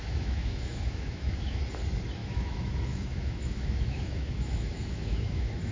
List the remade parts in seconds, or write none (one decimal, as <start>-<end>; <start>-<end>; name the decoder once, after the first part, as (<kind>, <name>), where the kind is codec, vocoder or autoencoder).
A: 0.0-1.6 (autoencoder, DAC-VAE); 2.2-5.7